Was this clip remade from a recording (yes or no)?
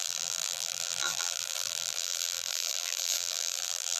yes